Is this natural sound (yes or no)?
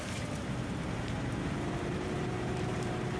no